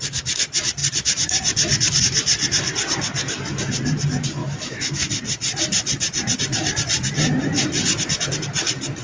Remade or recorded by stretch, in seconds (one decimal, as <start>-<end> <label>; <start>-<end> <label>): 0.0-4.4 recorded; 4.4-5.1 remade; 5.1-9.0 recorded